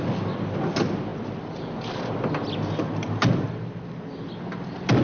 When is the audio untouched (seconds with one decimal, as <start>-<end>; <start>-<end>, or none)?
0.0-5.0